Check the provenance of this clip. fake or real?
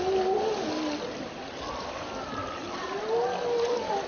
real